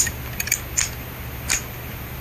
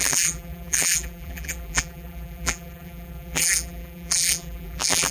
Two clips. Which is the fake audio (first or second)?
second